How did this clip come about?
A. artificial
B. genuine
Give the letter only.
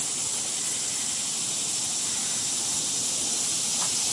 B